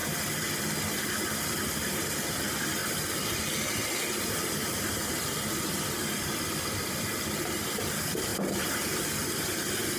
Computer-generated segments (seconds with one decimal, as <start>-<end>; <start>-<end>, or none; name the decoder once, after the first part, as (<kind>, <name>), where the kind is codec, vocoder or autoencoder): 1.4-2.8 (vocoder, BigVGAN v2); 7.0-8.3; 9.4-10.0